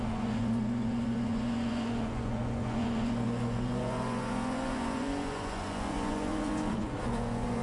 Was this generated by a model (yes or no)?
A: yes